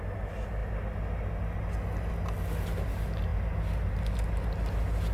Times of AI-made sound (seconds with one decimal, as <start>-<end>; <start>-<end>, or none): none